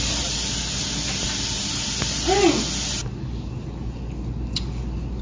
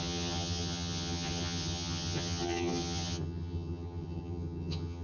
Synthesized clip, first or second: second